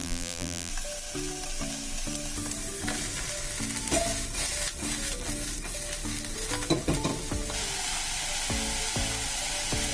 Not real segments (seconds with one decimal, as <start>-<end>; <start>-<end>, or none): 0.0-0.7

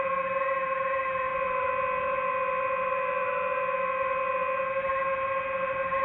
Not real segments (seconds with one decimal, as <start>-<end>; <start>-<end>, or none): none

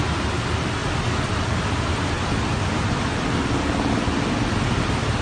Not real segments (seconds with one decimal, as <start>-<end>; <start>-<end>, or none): none

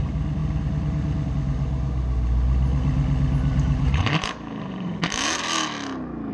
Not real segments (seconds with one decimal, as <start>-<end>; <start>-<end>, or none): 3.5-4.9